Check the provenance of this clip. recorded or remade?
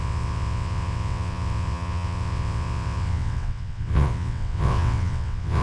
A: remade